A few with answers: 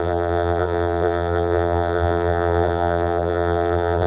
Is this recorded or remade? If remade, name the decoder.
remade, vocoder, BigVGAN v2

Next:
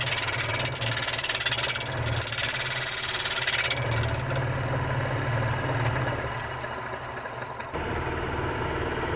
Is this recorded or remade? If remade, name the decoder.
recorded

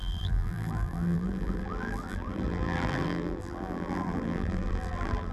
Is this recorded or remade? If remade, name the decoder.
remade, vocoder, BigVGAN v2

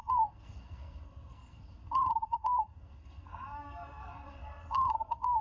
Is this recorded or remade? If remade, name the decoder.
remade, codec, SNAC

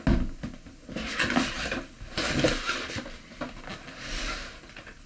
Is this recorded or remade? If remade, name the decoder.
recorded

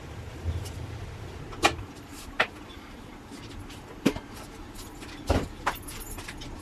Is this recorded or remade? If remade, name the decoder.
recorded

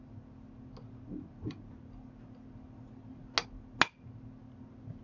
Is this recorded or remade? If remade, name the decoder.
recorded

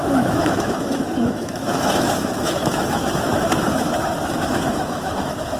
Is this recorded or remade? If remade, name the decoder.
remade, autoencoder, DAC-VAE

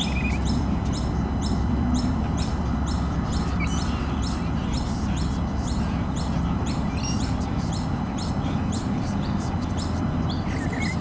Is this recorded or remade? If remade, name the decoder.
remade, vocoder, BigVGAN v2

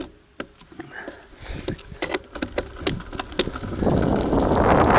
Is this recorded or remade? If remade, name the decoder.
recorded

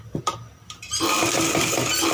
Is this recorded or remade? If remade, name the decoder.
recorded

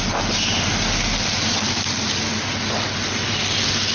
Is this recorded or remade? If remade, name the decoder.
recorded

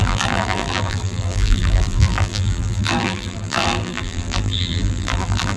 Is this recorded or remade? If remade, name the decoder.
remade, vocoder, BigVGAN v2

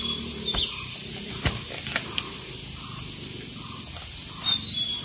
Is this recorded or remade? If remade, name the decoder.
recorded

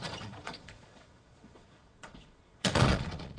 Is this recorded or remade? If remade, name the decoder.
remade, vocoder, Vocos